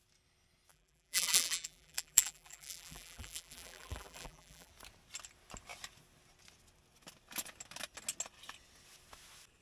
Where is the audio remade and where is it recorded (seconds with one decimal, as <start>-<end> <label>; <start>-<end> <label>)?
0.0-0.7 recorded; 0.7-4.7 remade; 4.7-9.6 recorded

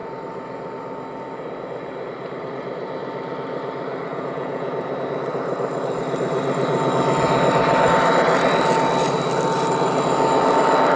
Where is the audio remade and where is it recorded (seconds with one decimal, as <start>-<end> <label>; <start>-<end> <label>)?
0.0-4.1 recorded; 4.1-4.7 remade; 4.7-11.0 recorded

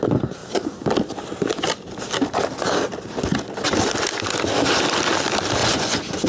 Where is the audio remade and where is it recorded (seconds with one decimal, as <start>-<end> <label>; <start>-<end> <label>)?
0.0-5.6 recorded; 5.6-6.3 remade